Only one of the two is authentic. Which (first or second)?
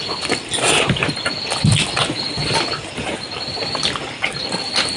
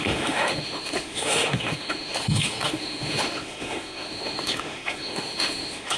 first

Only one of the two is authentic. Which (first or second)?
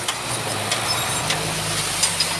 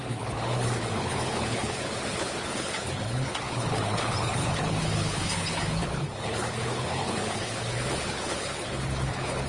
first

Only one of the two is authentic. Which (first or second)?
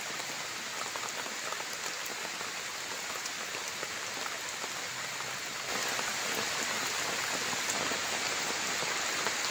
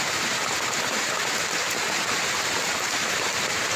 first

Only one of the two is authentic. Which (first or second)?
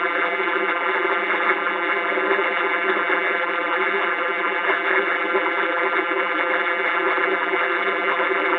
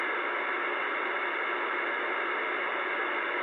second